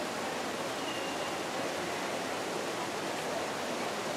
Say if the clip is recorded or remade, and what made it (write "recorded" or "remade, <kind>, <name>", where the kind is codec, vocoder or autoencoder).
recorded